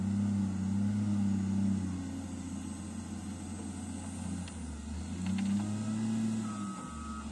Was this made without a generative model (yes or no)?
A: yes